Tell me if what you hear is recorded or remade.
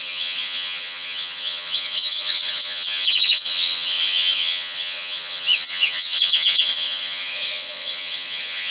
remade